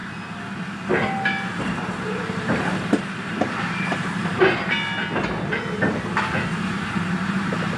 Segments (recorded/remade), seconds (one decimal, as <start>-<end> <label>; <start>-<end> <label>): 0.0-1.6 recorded; 1.6-4.2 remade; 4.2-6.7 recorded; 6.7-7.8 remade